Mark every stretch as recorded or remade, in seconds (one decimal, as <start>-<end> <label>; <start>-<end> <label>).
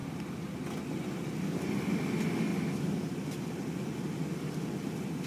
0.0-5.3 recorded